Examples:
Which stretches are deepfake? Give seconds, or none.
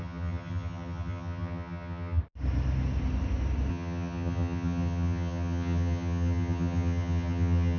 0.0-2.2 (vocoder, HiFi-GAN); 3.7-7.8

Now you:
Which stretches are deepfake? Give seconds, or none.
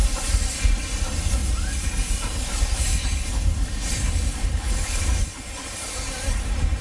4.4-5.0 (codec, HILCodec)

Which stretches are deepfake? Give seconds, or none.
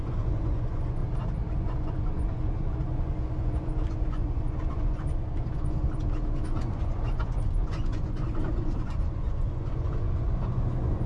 0.0-1.0 (vocoder, Vocos); 1.6-11.1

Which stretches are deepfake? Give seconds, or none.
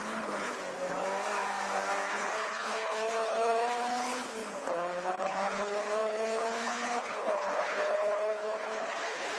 0.0-0.6 (codec, HILCodec); 2.1-9.4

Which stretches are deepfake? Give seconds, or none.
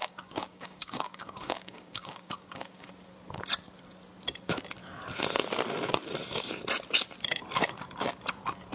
0.0-2.9 (codec, DAC)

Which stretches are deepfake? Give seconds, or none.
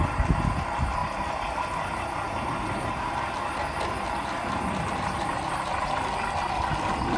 none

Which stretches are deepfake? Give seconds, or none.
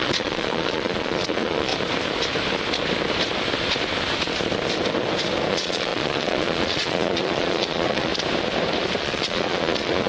0.0-1.7 (vocoder, Vocos); 5.5-8.1; 9.0-10.1